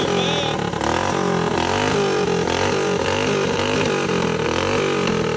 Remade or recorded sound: recorded